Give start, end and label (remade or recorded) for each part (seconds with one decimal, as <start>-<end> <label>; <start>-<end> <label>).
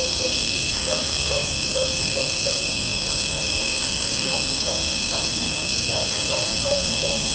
0.0-7.3 remade